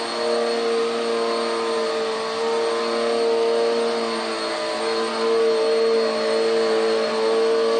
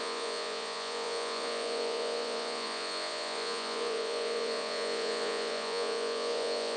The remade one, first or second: second